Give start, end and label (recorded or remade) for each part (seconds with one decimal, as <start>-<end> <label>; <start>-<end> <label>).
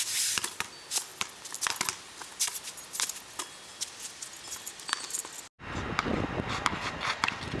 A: 0.0-7.6 recorded